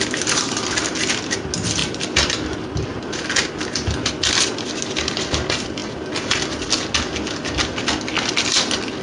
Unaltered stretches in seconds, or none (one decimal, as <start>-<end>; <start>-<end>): 0.0-1.8; 2.3-9.0